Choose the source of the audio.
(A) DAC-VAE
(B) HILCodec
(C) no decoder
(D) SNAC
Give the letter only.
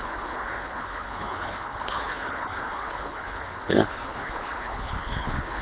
B